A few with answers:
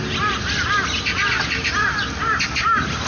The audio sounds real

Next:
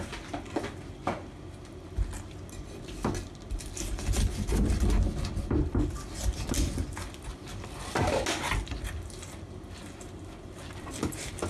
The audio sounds real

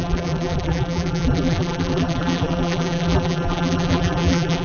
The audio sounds fake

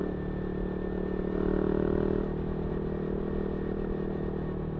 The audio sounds real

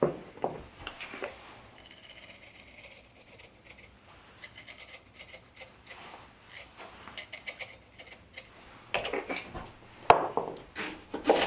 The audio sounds real